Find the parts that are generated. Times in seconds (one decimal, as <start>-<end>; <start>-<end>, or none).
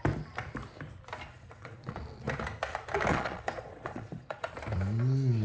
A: 1.3-2.0; 3.1-4.5